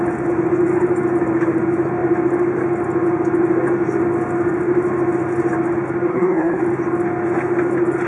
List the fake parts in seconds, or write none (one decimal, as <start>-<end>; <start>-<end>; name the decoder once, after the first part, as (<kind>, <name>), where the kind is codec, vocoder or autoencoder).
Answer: 6.1-6.6 (codec, SNAC)